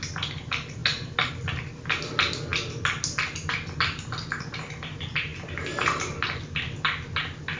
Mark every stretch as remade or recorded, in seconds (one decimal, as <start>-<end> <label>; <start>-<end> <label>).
0.0-7.6 recorded